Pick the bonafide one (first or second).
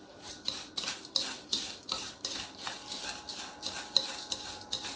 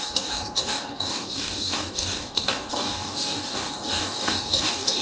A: first